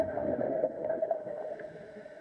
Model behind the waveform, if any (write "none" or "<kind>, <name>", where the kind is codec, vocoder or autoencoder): autoencoder, DAC-VAE